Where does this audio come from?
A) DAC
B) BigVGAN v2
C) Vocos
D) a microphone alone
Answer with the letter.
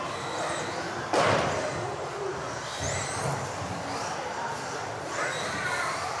D